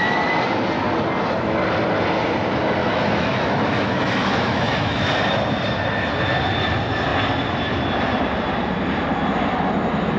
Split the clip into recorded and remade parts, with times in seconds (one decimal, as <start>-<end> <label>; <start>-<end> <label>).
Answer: 0.0-2.8 recorded; 2.8-5.1 remade; 5.1-10.2 recorded